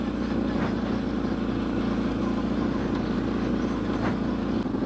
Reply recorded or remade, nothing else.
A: recorded